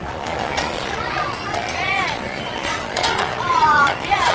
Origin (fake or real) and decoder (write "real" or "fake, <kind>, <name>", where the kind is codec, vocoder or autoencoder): fake, vocoder, Vocos